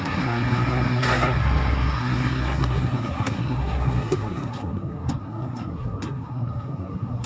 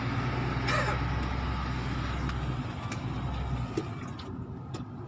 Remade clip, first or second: first